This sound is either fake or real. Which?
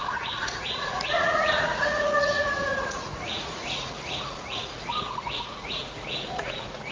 fake